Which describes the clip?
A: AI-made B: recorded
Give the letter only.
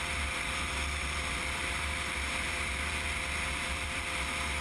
A